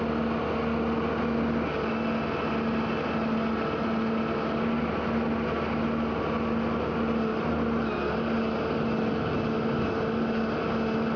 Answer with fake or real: real